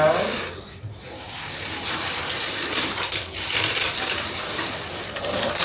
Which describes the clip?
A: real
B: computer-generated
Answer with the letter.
A